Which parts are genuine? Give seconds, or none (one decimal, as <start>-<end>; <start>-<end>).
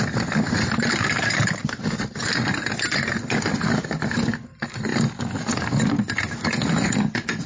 0.0-7.5